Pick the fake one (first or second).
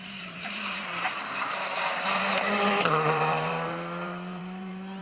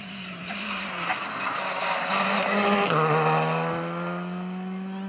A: first